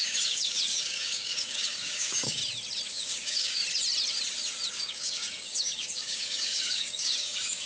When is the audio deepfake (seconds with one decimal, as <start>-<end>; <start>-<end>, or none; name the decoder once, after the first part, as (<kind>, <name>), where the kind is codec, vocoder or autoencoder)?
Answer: 0.0-2.4 (codec, DAC); 2.9-3.6; 4.7-7.7